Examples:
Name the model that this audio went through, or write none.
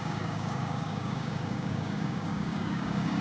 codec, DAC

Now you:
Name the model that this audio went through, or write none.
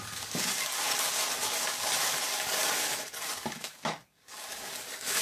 codec, DAC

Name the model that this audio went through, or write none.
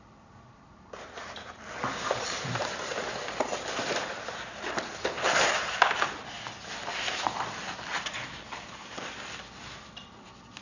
none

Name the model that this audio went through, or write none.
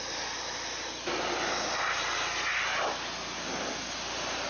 none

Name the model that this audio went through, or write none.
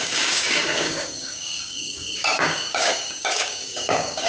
codec, DAC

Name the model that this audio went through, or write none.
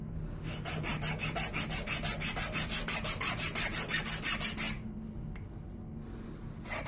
none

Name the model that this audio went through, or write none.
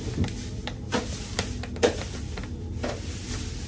none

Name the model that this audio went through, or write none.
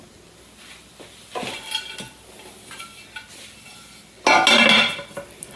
none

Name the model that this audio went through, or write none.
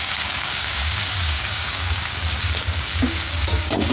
codec, DAC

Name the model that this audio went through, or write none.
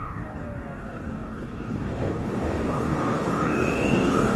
codec, DAC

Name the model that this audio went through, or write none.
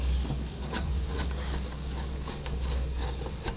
codec, DAC